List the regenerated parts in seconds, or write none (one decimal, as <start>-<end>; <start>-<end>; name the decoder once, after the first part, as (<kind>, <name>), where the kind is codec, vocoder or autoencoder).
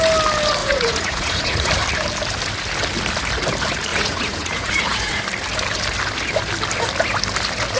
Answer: 0.6-1.7 (vocoder, Vocos); 3.9-5.2